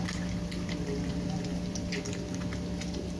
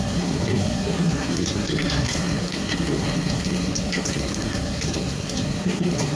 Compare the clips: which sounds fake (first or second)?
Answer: second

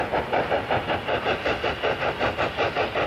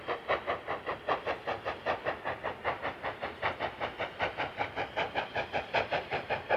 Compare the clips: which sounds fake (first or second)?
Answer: second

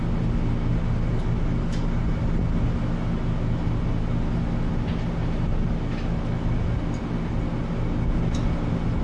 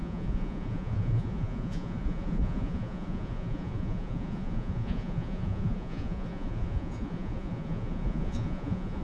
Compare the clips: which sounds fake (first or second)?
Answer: second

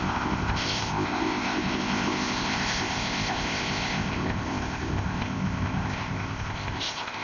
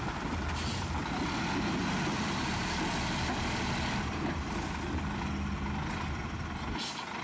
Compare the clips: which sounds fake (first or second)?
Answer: first